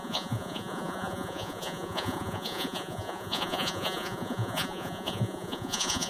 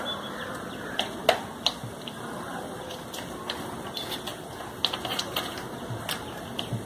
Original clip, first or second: second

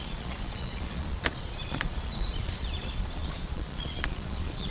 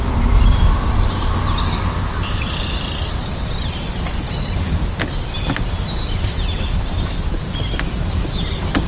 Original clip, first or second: second